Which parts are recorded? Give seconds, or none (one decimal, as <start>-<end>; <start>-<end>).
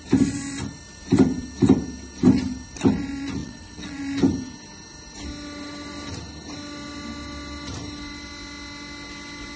0.0-3.4; 4.0-9.6